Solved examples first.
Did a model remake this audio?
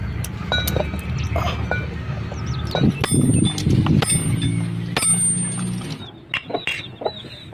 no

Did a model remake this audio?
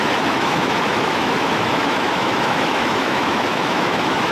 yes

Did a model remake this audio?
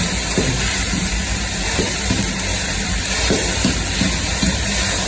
yes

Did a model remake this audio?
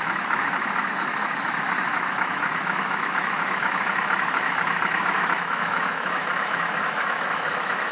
yes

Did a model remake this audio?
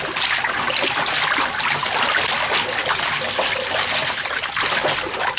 no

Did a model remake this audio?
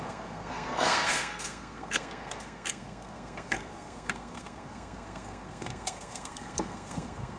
yes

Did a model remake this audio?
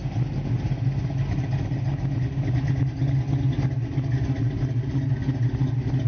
no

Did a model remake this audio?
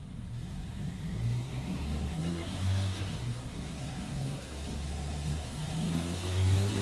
yes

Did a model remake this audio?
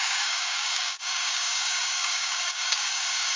yes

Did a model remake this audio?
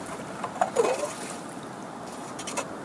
no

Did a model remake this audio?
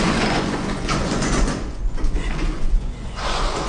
yes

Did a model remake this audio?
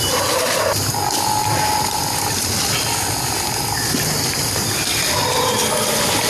no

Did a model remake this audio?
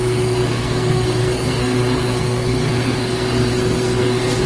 yes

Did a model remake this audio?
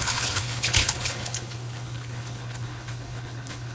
yes